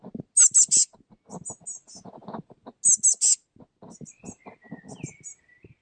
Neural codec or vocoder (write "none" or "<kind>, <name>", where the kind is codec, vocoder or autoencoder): none